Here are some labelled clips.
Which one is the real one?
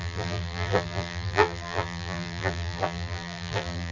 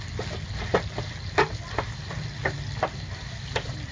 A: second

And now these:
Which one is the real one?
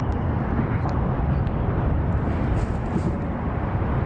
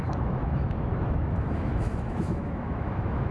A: first